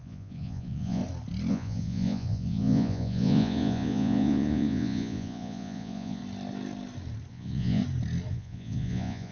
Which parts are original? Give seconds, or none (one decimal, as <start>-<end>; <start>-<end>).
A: 1.0-1.5; 6.2-7.3; 7.8-8.3